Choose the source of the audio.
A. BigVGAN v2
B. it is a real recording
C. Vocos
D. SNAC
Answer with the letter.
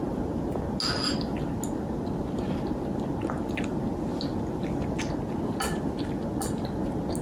B